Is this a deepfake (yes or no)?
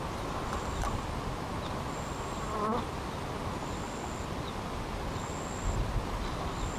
no